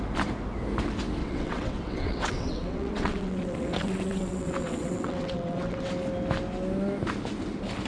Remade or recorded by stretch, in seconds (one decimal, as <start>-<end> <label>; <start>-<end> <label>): 0.0-1.2 recorded; 1.2-5.9 remade; 5.9-7.9 recorded